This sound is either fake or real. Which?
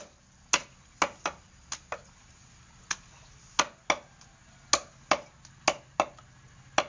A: real